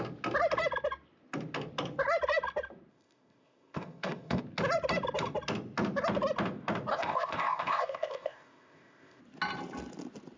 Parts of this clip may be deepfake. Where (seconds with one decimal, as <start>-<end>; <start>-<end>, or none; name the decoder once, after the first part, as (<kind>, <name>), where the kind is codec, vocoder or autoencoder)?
2.9-4.4 (codec, ZipCodec); 6.9-9.2